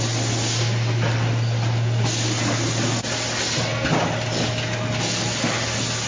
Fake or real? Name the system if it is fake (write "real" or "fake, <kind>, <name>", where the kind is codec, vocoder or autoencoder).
real